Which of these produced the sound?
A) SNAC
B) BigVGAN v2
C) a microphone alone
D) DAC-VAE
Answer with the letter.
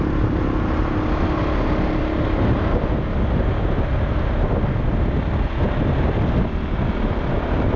C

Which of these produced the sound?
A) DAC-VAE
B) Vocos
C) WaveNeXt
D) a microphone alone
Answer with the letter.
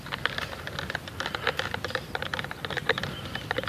D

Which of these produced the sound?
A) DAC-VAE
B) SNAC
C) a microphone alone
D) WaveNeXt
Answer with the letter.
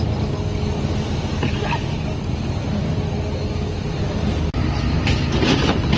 C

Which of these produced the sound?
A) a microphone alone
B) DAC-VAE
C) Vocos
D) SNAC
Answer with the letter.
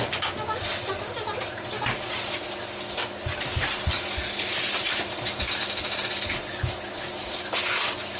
A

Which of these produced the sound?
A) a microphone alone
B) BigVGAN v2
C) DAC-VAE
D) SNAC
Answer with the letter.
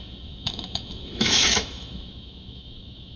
C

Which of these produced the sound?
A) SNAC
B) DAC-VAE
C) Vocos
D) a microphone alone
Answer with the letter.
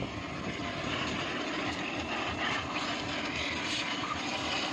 D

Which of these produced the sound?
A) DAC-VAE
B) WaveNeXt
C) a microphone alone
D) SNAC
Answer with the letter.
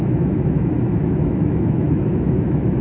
A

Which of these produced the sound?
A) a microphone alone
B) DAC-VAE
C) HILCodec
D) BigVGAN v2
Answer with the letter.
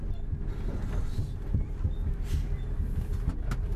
A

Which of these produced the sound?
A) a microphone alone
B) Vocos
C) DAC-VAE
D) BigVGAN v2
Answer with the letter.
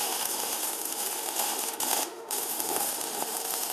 C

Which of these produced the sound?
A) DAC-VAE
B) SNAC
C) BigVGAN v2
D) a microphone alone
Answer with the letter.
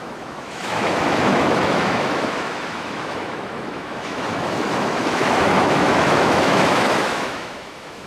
A